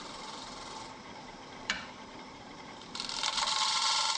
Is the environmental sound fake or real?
fake